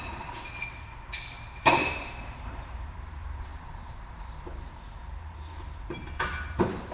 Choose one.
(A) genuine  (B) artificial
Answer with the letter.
B